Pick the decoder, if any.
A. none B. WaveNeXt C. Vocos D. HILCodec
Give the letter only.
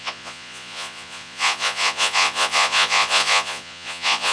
C